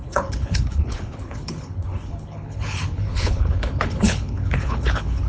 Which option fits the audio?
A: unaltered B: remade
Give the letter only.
B